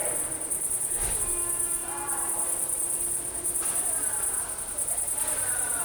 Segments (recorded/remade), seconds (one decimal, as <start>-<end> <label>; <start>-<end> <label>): 0.0-1.2 remade; 1.2-1.8 recorded; 1.8-3.9 remade; 3.9-5.8 recorded